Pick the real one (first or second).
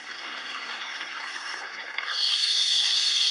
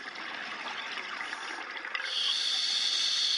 second